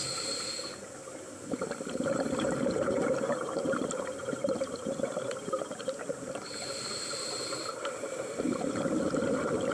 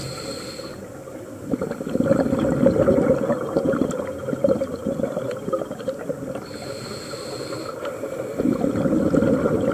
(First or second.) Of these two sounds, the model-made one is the first